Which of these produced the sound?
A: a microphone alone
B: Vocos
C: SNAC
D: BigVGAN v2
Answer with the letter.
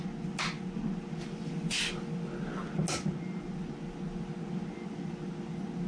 A